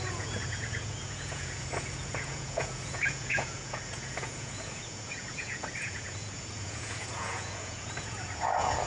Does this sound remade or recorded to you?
remade